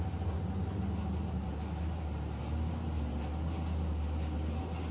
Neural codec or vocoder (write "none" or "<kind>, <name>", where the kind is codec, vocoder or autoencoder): none